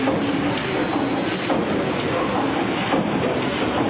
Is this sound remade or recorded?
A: recorded